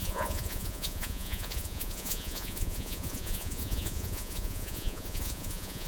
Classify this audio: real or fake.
fake